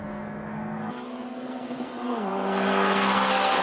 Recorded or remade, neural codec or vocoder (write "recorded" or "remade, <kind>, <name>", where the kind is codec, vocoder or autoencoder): remade, codec, SNAC